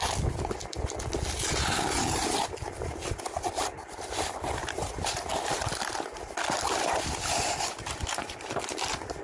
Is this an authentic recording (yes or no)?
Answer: yes